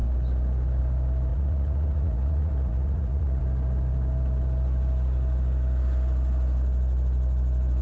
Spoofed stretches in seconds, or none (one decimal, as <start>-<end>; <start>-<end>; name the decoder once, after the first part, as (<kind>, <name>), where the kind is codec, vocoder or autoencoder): 1.3-3.4 (vocoder, Vocos)